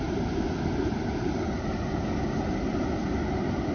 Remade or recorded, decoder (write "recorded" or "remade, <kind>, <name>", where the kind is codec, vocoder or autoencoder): recorded